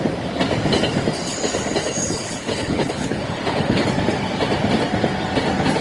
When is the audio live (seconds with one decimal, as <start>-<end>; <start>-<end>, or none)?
0.0-2.0; 3.9-5.8